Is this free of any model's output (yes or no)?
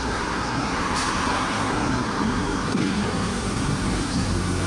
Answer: no